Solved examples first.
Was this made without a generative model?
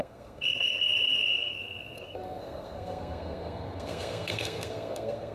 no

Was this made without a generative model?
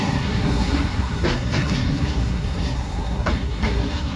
no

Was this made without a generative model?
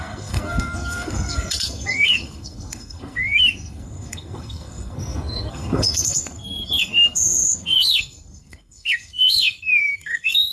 no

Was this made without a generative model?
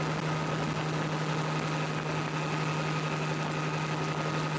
yes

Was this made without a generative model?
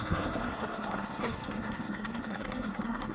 no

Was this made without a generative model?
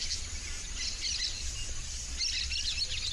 yes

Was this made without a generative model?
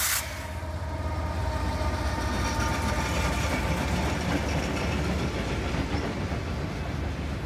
yes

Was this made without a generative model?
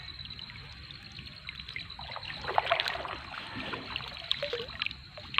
yes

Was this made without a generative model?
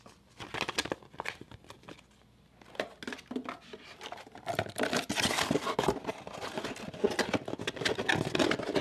yes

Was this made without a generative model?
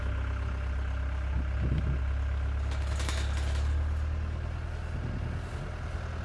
yes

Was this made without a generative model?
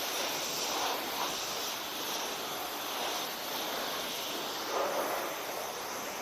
yes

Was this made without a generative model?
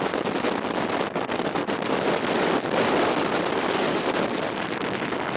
yes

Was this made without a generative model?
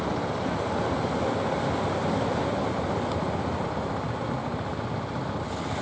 yes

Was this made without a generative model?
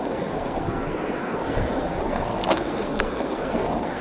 no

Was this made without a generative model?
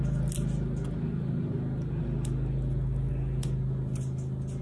yes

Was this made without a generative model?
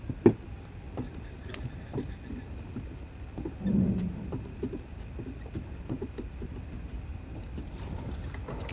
yes